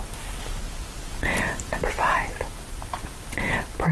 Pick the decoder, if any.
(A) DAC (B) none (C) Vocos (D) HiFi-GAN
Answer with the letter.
B